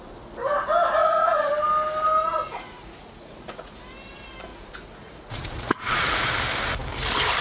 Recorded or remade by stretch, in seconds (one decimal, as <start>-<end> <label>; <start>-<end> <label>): 0.0-1.0 recorded; 1.0-1.5 remade; 1.5-2.3 recorded; 2.3-3.8 remade; 3.8-4.5 recorded; 4.5-6.3 remade; 6.3-7.4 recorded